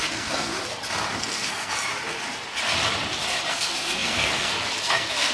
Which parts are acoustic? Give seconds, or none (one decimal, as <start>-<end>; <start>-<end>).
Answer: 0.5-1.2; 1.8-3.5